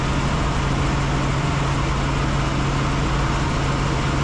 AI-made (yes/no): no